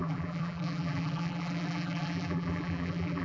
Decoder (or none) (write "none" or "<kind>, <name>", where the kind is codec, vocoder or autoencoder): vocoder, BigVGAN v2